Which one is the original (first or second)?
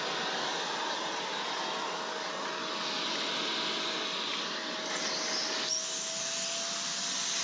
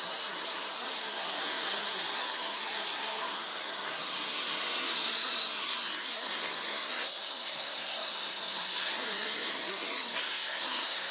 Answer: first